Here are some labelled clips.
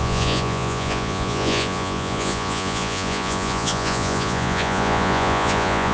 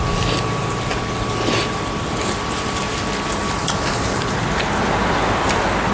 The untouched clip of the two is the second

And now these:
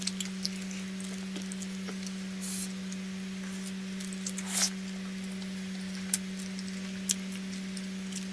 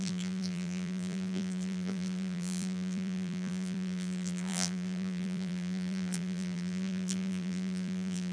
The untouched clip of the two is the first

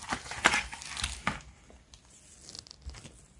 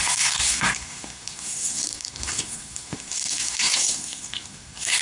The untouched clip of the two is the first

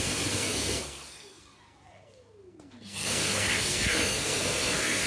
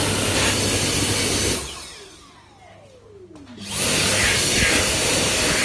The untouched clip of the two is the second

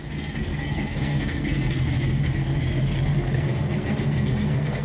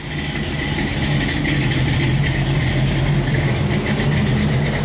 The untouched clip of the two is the second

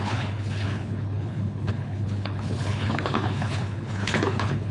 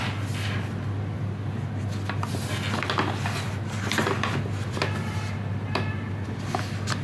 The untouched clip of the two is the second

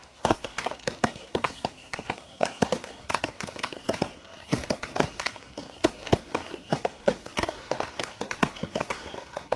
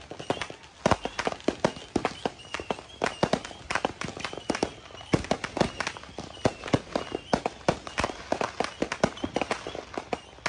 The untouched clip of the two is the second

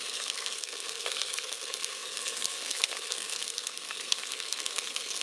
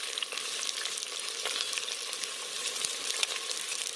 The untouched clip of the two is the second